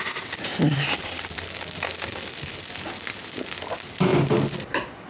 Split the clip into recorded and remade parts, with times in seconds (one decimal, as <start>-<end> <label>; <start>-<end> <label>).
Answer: 0.0-5.1 recorded